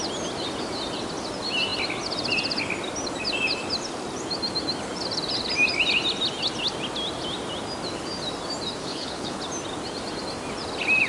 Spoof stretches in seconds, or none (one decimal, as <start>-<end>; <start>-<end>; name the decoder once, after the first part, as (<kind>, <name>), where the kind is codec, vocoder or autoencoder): 8.8-9.4 (codec, HILCodec)